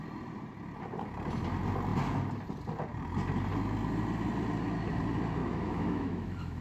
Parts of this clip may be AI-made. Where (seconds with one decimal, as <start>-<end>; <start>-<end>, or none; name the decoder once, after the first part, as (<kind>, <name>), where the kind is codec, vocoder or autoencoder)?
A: 5.4-6.6 (autoencoder, DAC-VAE)